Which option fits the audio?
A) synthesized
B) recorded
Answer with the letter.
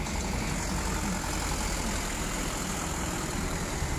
B